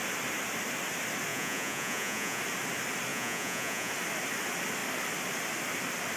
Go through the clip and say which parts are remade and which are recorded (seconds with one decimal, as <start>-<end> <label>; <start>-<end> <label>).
0.0-1.3 recorded; 1.3-2.4 remade; 2.4-3.1 recorded; 3.1-3.9 remade; 3.9-6.2 recorded